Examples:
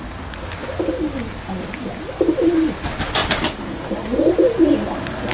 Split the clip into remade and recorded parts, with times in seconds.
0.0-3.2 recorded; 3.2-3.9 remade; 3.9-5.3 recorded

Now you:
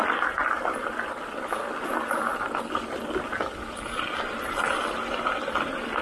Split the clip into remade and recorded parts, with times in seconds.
0.0-6.0 recorded

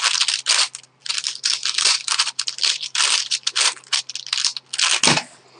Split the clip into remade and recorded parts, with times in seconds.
0.0-1.0 recorded; 1.0-4.0 remade; 4.0-5.6 recorded

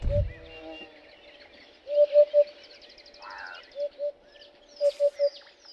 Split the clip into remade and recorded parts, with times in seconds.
0.0-5.7 recorded

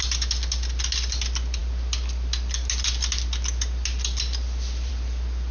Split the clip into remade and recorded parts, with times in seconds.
0.0-5.5 recorded

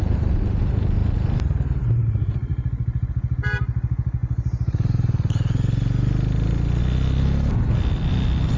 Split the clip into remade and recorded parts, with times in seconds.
0.0-2.5 recorded; 2.5-3.1 remade; 3.1-8.6 recorded

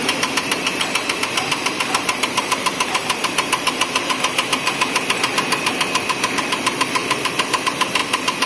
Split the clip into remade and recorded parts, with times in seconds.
0.0-0.6 remade; 0.6-1.2 recorded; 1.2-3.0 remade; 3.0-5.2 recorded; 5.2-8.0 remade; 8.0-8.5 recorded